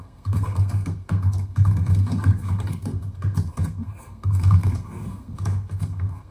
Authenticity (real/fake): fake